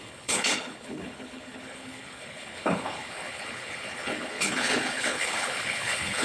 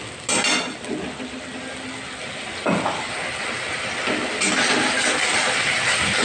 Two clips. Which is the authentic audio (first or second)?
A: second